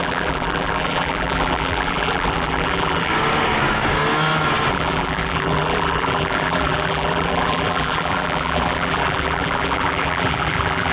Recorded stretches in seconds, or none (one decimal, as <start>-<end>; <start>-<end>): 3.1-4.7